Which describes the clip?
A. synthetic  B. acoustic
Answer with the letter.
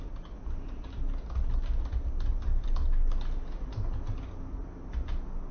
B